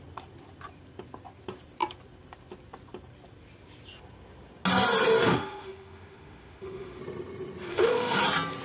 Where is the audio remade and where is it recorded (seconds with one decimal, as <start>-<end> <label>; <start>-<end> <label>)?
0.0-5.3 recorded; 5.3-7.0 remade; 7.0-7.7 recorded; 7.7-8.2 remade; 8.2-8.6 recorded